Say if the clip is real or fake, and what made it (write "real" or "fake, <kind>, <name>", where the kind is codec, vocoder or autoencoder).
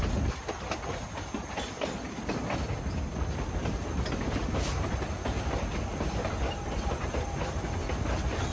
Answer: real